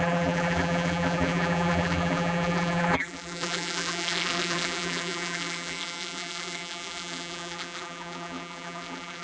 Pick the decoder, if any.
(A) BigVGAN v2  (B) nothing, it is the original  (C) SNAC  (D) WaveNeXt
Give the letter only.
A